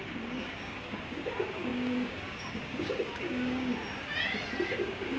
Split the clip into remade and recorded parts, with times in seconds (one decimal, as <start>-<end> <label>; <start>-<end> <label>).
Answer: 0.0-3.7 remade; 3.7-4.8 recorded; 4.8-5.2 remade